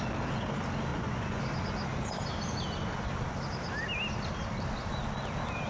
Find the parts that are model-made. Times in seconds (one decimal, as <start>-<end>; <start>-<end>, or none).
0.9-1.4